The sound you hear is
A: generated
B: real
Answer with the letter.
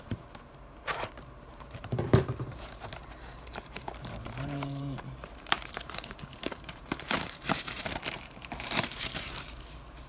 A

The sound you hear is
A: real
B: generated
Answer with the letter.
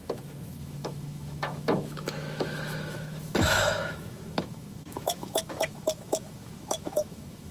B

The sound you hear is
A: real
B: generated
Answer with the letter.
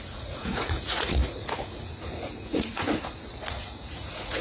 B